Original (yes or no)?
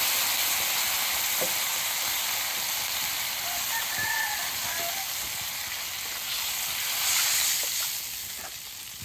yes